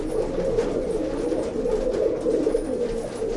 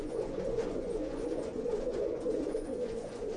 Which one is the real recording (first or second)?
first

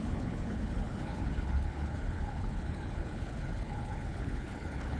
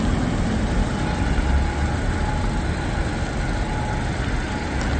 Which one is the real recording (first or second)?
second